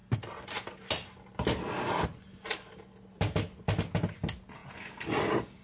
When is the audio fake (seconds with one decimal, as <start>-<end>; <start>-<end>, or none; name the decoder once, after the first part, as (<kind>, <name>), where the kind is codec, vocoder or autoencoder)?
4.6-5.6 (vocoder, BigVGAN v2)